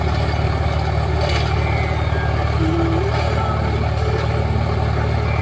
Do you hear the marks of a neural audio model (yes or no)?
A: no